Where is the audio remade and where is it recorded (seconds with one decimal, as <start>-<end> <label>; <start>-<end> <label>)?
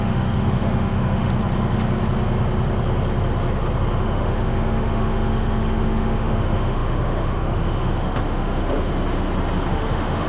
0.0-1.3 remade; 1.3-4.0 recorded; 4.0-8.9 remade; 8.9-9.7 recorded; 9.7-10.3 remade